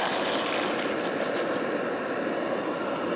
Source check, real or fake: real